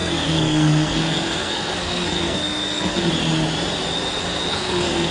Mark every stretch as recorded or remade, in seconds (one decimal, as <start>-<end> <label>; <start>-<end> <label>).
0.0-3.1 remade; 3.1-4.5 recorded; 4.5-5.1 remade